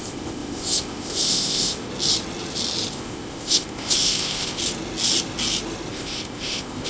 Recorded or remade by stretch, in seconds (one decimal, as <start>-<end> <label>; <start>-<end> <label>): 0.0-1.9 remade; 1.9-2.9 recorded; 2.9-4.6 remade; 4.6-5.9 recorded; 5.9-6.9 remade